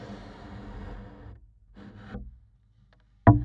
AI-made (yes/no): no